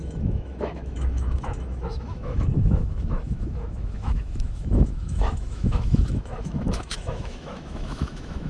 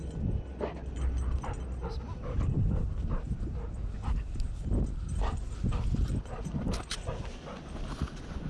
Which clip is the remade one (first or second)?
first